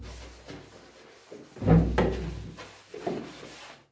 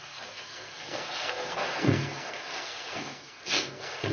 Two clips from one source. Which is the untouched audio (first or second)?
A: first